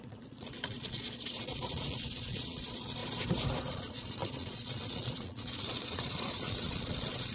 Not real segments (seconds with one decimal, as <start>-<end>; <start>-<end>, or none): 0.0-3.0; 3.6-7.3